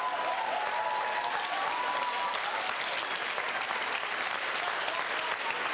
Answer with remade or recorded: recorded